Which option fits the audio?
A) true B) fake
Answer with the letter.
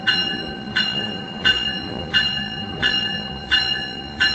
B